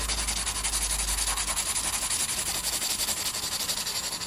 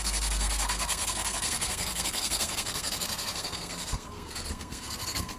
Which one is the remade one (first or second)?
second